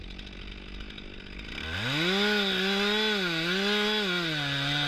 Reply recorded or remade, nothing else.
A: recorded